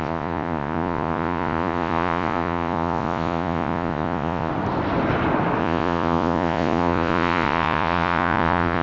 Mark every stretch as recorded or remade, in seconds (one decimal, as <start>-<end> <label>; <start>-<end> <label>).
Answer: 0.0-4.5 remade; 4.5-5.6 recorded; 5.6-8.8 remade